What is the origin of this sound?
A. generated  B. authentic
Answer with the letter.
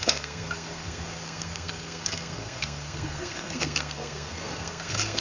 A